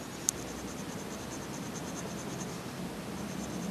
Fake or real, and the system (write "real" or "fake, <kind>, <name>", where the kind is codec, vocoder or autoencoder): real